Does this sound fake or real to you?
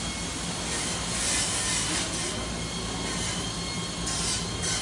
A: real